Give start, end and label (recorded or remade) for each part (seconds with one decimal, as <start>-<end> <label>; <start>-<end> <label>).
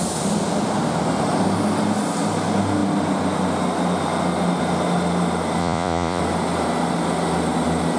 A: 0.0-5.6 recorded; 5.6-6.2 remade; 6.2-8.0 recorded